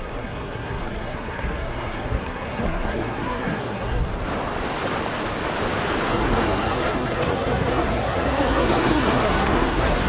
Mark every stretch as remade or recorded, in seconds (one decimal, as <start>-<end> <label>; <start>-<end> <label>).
0.0-4.1 remade; 4.1-6.1 recorded; 6.1-10.1 remade